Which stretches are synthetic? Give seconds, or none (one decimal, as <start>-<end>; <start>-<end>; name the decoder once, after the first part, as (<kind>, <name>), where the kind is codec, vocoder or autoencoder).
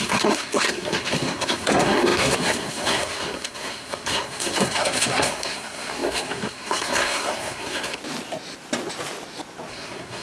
0.0-8.0 (codec, SNAC); 9.7-10.2